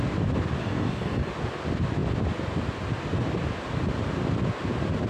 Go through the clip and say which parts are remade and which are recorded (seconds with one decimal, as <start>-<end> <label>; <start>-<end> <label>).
0.0-0.6 recorded; 0.6-1.3 remade; 1.3-5.1 recorded